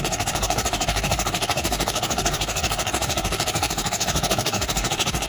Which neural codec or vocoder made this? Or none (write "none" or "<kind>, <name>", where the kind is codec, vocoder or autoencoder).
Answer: codec, DAC